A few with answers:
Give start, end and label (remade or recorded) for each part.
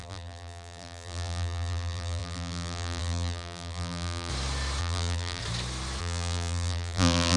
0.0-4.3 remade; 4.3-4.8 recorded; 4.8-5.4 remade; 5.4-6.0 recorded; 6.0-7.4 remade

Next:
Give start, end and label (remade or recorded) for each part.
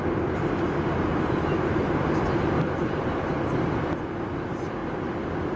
0.0-1.1 recorded; 1.1-3.3 remade; 3.3-5.6 recorded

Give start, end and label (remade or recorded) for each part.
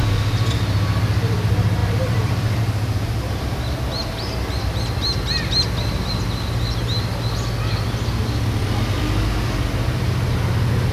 0.0-1.8 recorded; 1.8-2.6 remade; 2.6-10.9 recorded